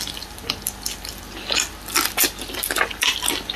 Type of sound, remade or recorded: recorded